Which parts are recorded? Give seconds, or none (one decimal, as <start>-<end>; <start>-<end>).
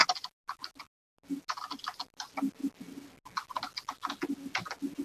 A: 0.0-5.0